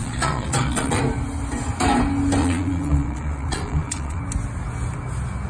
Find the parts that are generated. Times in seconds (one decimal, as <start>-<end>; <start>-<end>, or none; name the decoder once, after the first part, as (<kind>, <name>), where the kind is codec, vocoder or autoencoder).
0.0-1.0 (vocoder, Vocos); 2.4-4.2